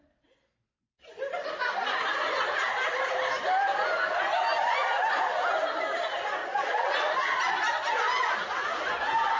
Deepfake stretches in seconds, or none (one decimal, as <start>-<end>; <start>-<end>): 6.4-7.4